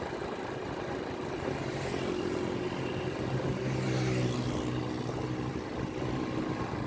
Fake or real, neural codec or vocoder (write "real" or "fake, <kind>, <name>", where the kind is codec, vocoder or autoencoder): real